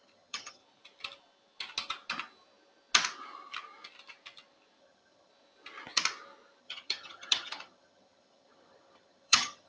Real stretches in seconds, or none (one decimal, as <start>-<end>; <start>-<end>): 0.6-4.8; 5.3-6.6